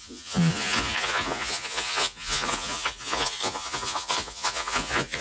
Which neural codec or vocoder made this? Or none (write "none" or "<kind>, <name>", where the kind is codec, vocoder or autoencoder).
vocoder, Vocos